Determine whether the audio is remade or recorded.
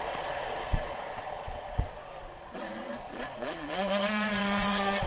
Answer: remade